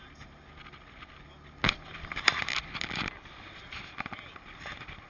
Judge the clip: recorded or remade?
recorded